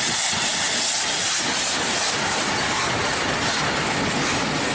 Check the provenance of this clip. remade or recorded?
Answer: recorded